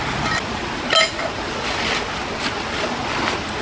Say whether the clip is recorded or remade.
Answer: recorded